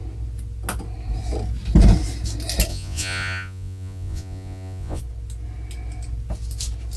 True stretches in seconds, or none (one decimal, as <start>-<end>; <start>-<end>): 0.0-2.7; 5.0-7.0